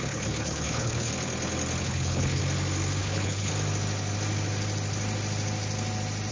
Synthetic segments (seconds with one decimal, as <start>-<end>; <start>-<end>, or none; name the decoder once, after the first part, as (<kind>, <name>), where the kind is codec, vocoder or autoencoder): 0.0-1.1 (codec, HILCodec); 1.8-2.4; 3.0-3.5